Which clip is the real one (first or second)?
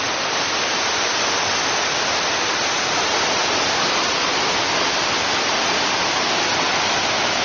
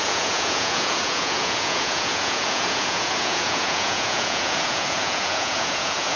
first